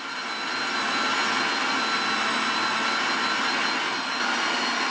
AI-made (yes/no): no